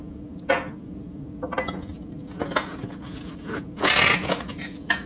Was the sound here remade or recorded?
recorded